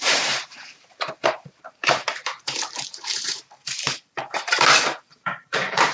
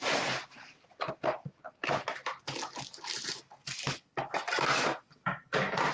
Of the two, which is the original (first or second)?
second